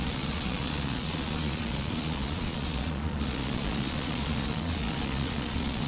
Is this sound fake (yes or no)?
yes